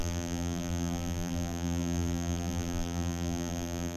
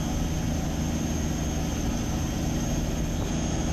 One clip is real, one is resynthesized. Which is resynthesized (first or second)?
first